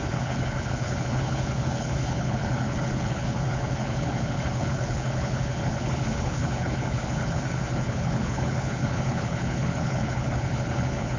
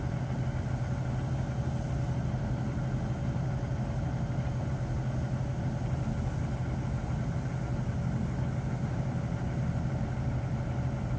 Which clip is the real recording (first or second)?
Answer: second